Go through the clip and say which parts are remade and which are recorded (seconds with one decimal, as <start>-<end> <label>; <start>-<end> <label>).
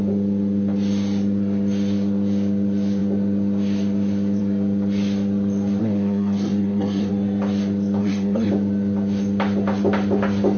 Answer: 0.0-5.8 recorded; 5.8-7.1 remade; 7.1-8.0 recorded; 8.0-8.5 remade; 8.5-10.6 recorded